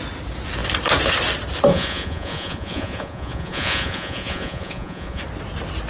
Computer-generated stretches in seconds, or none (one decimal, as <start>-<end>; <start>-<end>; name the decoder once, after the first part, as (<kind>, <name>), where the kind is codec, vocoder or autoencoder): 1.7-5.2 (vocoder, Vocos)